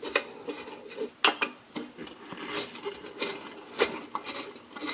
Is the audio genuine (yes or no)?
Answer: yes